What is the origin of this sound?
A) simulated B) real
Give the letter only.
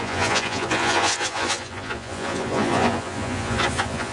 A